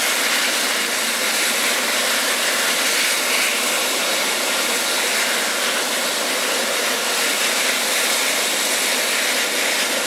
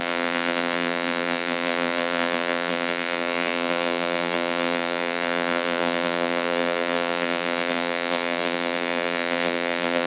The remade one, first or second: second